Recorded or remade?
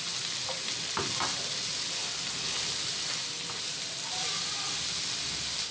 recorded